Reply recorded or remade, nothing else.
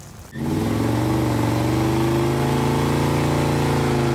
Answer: recorded